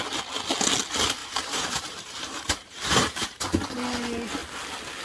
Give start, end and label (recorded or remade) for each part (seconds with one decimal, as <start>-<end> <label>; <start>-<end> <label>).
0.0-1.2 recorded; 1.2-3.4 remade; 3.4-5.0 recorded